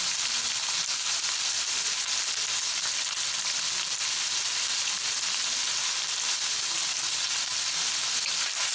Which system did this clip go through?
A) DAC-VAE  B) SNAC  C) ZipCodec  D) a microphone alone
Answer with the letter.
D